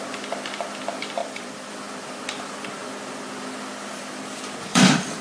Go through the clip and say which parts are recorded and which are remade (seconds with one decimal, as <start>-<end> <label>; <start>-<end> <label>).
0.0-1.2 recorded; 1.2-1.7 remade; 1.7-4.7 recorded; 4.7-5.2 remade